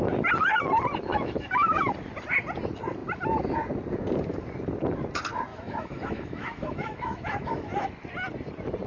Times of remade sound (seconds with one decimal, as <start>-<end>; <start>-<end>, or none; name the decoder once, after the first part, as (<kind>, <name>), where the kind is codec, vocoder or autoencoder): 1.1-1.9 (autoencoder, DAC-VAE); 5.5-7.9